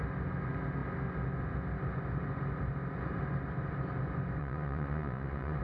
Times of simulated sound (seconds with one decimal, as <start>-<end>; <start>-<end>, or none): 4.4-5.6